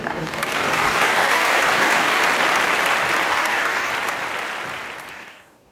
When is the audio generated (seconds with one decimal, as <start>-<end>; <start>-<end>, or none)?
0.0-2.2; 3.3-3.9; 5.1-5.7

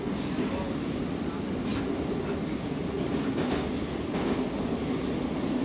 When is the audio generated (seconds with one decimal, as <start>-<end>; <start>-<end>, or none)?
none

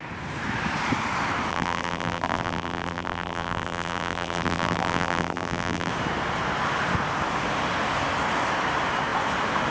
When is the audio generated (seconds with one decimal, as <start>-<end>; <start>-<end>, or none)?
1.5-5.9

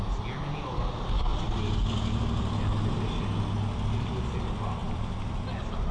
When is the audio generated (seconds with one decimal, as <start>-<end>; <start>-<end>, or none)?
4.8-5.9

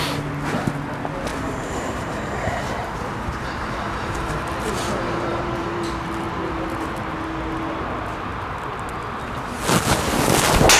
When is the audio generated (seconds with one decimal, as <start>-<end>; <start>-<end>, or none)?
1.3-5.8

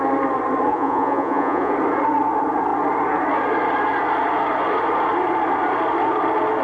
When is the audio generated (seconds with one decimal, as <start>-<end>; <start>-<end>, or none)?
0.7-1.7

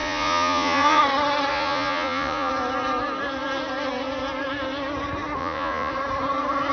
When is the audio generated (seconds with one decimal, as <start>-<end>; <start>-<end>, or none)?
0.0-1.0; 1.5-2.5; 5.4-5.9

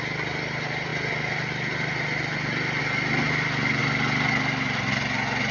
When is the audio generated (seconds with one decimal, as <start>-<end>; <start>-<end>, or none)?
none